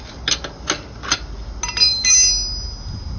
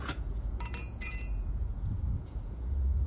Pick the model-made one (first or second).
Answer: second